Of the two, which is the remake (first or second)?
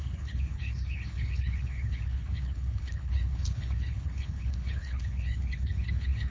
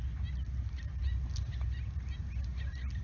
first